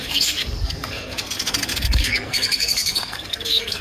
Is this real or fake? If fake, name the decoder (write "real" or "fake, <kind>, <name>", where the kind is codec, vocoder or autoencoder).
fake, codec, SNAC